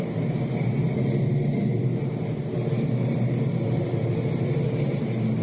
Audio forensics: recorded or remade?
remade